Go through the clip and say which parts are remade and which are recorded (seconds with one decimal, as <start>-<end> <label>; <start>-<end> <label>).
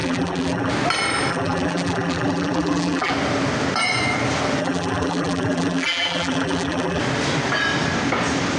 0.0-0.7 remade; 0.7-1.3 recorded; 1.3-3.1 remade; 3.1-4.6 recorded; 4.6-7.0 remade; 7.0-8.6 recorded